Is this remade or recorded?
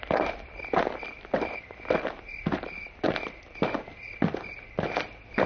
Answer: recorded